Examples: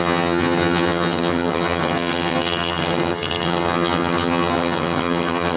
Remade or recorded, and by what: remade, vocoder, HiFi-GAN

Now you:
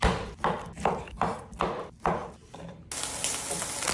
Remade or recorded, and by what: recorded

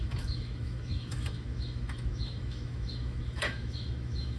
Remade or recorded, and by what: remade, autoencoder, DAC-VAE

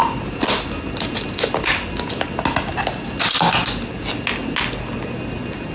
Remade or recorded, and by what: recorded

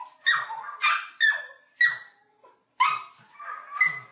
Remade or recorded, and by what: recorded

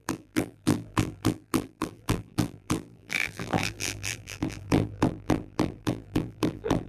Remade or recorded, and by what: remade, vocoder, BigVGAN v2